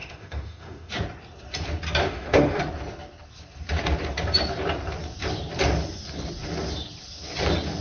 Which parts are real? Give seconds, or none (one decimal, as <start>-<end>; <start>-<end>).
0.9-2.0; 2.6-7.8